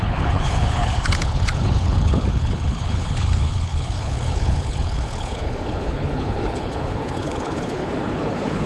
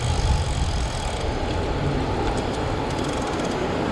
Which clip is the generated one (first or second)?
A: first